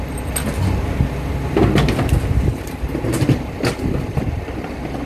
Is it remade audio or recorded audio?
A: recorded